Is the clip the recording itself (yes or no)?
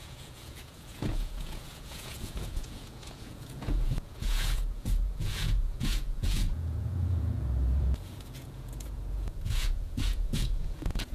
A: no